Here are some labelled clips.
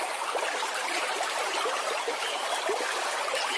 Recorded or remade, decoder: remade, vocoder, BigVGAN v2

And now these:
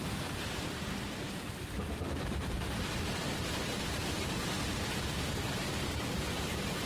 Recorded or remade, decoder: recorded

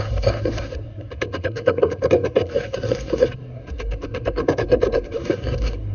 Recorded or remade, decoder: remade, codec, SNAC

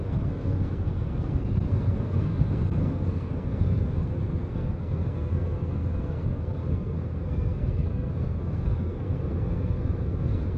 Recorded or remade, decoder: remade, codec, SNAC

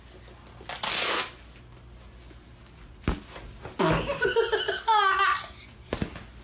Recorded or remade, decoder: recorded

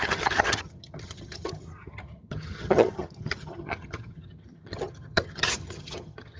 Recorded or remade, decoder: remade, vocoder, HiFi-GAN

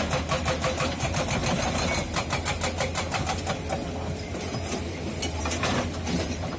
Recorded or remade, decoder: recorded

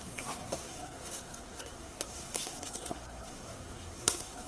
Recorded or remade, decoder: remade, codec, SNAC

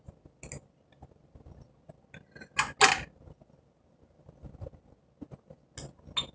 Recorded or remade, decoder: recorded